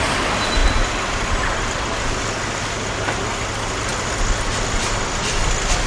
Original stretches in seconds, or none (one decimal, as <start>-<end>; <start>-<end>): 0.0-5.9